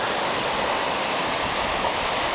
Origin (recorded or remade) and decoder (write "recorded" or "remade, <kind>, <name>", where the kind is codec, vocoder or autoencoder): recorded